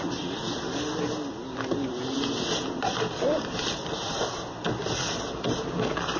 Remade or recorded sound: recorded